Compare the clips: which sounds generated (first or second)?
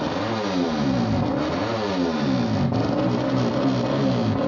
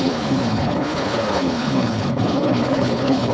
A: second